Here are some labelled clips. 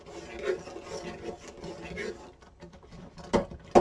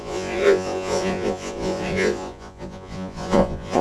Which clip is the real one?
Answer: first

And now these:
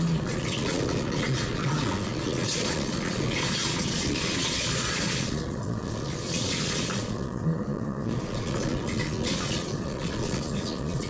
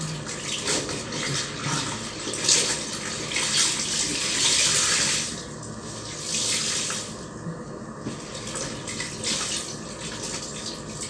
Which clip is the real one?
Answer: second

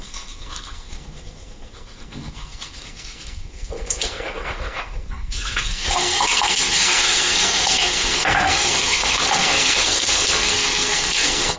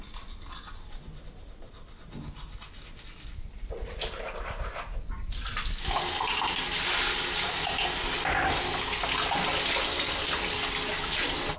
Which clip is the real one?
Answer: second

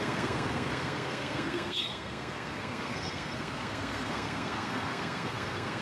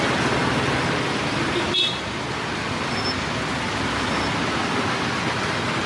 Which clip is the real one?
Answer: second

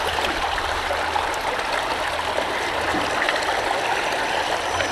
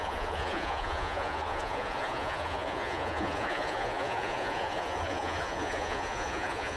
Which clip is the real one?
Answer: first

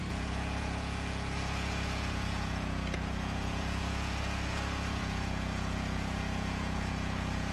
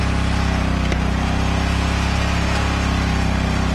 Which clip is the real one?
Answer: second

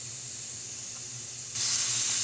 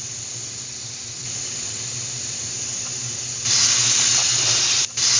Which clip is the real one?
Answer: first